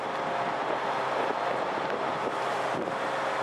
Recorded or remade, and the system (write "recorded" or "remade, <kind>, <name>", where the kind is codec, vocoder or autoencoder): recorded